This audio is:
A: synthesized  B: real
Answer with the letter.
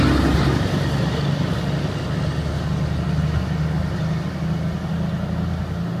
B